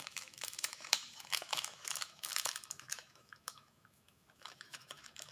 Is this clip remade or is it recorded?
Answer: remade